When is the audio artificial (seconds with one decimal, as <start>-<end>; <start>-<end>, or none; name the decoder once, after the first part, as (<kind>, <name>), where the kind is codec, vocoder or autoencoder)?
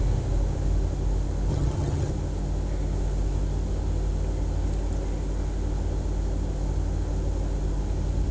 1.5-2.1 (vocoder, HiFi-GAN)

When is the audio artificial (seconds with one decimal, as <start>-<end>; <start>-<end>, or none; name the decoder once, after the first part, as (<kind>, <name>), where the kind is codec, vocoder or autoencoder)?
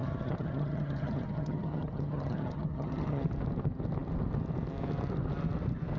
0.0-3.2 (vocoder, HiFi-GAN)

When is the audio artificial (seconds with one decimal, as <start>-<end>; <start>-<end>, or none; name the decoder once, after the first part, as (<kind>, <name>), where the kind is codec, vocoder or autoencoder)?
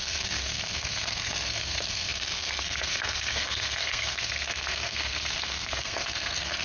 0.0-6.6 (codec, SNAC)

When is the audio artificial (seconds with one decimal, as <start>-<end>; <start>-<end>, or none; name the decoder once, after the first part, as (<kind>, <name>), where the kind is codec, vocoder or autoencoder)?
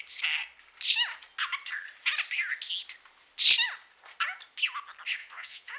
5.2-5.8 (vocoder, Vocos)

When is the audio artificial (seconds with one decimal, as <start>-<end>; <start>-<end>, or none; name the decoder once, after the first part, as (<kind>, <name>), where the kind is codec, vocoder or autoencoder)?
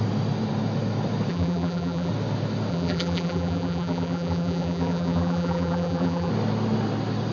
1.3-2.1 (vocoder, BigVGAN v2); 2.7-6.3